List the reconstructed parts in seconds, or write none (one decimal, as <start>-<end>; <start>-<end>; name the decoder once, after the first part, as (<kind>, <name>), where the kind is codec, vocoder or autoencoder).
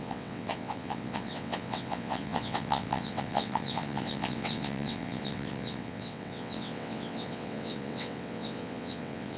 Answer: 0.0-9.4 (vocoder, WaveNeXt)